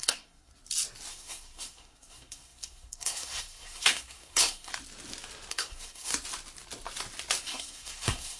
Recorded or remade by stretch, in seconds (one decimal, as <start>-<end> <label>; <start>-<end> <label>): 0.0-0.5 remade; 0.5-1.1 recorded; 1.1-4.7 remade; 4.7-5.5 recorded; 5.5-6.1 remade; 6.1-7.4 recorded; 7.4-8.4 remade